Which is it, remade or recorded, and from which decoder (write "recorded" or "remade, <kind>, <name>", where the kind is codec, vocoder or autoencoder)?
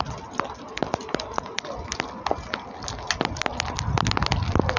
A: recorded